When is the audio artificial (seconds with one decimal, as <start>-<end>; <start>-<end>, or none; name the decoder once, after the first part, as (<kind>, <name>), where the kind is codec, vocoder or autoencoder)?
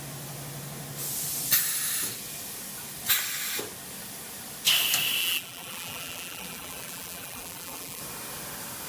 5.2-8.0 (vocoder, BigVGAN v2)